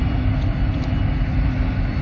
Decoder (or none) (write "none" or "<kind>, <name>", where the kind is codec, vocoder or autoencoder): none